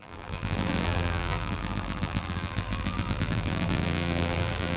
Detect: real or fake fake